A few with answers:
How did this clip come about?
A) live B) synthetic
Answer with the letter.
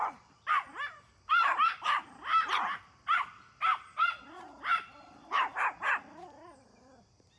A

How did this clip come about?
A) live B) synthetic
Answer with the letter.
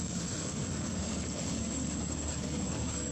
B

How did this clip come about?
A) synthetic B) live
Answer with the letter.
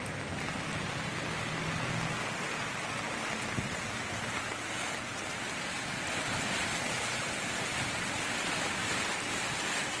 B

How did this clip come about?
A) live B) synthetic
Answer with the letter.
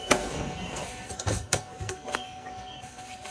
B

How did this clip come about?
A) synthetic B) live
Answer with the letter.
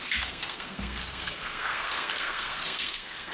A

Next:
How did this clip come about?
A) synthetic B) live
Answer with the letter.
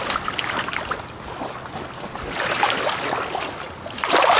B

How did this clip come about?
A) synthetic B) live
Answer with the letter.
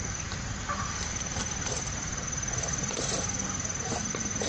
B